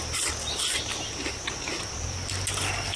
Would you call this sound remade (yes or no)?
no